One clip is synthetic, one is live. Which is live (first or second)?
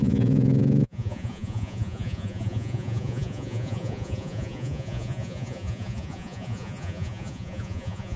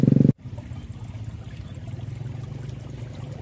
second